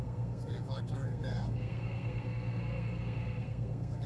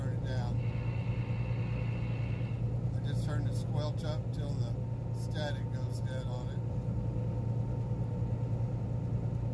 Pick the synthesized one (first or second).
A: first